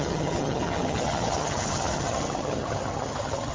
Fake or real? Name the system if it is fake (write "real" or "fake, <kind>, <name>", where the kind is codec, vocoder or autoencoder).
fake, vocoder, HiFi-GAN